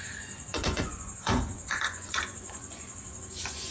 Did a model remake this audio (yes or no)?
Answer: yes